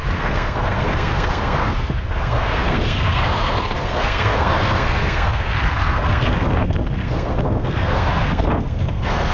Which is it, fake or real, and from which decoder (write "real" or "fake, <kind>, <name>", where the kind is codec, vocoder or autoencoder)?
fake, codec, SNAC